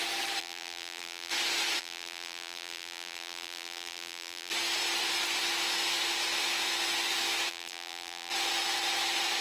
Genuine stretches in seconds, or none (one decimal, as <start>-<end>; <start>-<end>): 0.0-0.4; 1.3-1.8; 4.5-7.5; 8.3-9.4